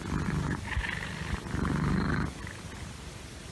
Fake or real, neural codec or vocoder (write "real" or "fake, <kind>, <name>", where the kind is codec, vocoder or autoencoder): real